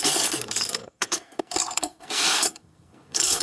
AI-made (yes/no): yes